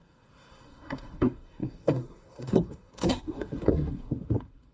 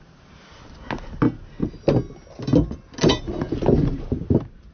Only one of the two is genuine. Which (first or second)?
second